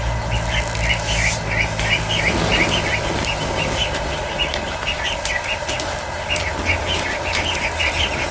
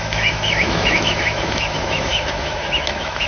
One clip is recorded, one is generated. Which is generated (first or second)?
second